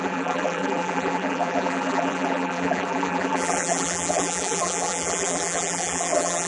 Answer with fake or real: fake